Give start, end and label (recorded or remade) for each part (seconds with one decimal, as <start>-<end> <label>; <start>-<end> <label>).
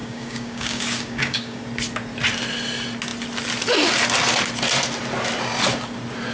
0.0-1.6 remade; 1.6-6.3 recorded